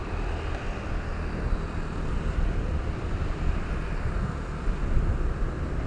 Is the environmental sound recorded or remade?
recorded